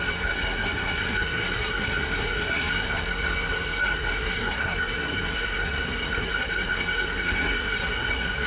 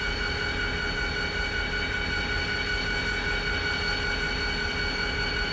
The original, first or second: second